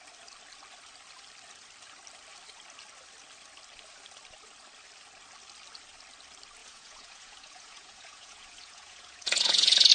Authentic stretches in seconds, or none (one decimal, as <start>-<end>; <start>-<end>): 0.0-6.6